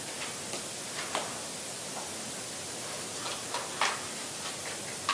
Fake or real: real